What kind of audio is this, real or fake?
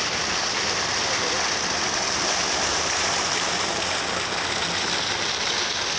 real